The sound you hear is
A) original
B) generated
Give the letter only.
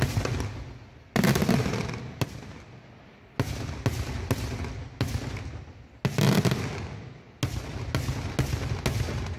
A